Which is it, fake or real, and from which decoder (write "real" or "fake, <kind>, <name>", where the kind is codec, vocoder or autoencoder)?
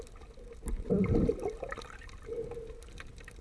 real